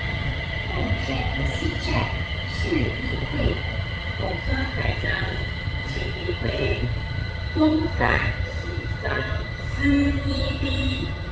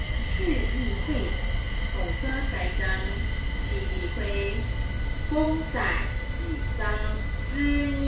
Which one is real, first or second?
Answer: second